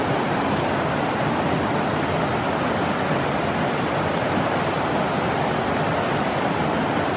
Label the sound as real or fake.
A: real